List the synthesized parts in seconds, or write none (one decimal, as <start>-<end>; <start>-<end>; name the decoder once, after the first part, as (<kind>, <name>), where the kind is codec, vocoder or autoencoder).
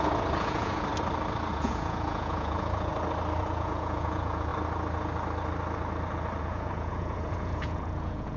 0.0-0.9 (vocoder, Vocos); 1.5-2.9; 3.4-4.5; 6.4-8.4